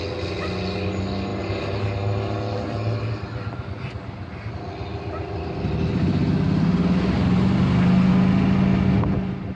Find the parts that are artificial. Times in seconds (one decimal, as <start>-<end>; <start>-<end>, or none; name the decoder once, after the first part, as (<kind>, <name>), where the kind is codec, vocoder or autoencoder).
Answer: none